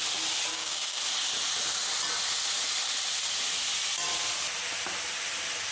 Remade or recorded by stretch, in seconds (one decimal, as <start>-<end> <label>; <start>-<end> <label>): 0.0-0.5 recorded; 0.5-1.0 remade; 1.0-5.7 recorded